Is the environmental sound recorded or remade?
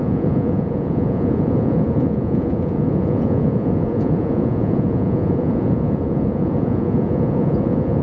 remade